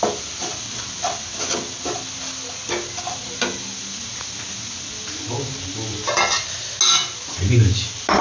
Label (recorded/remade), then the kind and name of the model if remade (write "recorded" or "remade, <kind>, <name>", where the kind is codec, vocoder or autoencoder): recorded